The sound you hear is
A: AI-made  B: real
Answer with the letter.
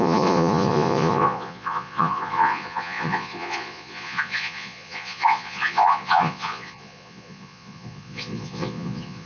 A